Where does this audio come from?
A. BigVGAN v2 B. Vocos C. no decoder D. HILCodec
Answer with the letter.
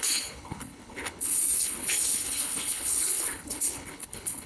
D